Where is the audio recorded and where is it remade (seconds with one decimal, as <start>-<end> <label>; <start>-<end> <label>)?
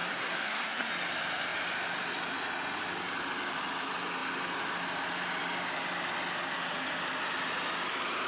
0.0-0.9 remade; 0.9-8.3 recorded